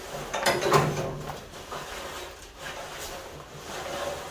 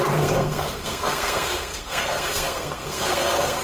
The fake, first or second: second